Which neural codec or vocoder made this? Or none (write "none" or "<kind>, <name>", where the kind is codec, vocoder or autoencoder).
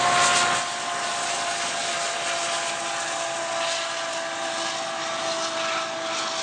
none